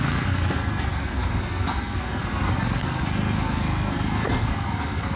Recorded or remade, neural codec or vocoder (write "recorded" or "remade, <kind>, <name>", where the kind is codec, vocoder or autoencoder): remade, codec, SNAC